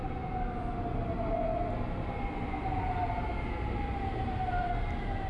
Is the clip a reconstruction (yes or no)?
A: no